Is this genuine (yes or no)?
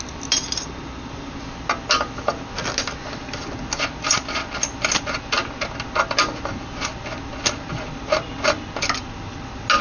yes